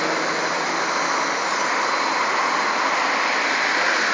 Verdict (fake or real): real